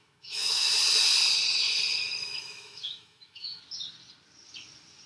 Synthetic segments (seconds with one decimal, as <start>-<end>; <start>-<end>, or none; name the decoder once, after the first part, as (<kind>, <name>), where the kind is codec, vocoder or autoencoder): 0.0-0.7 (autoencoder, DAC-VAE); 2.2-3.6